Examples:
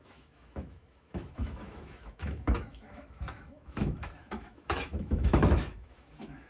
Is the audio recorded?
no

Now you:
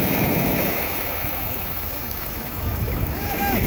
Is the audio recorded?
no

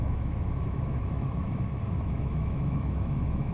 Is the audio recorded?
no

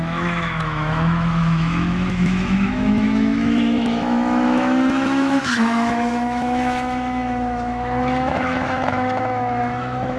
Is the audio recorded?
no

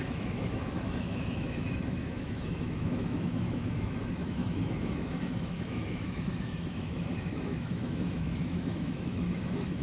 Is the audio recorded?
no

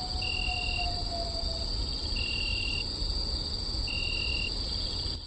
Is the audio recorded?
yes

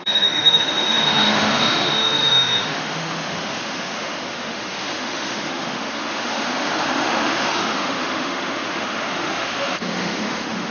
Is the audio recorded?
no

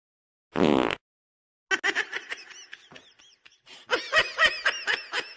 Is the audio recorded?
yes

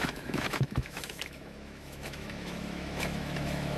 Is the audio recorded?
no